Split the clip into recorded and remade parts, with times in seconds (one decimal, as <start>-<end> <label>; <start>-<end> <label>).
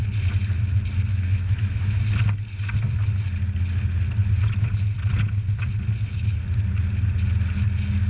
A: 0.0-1.1 recorded; 1.1-2.0 remade; 2.0-8.1 recorded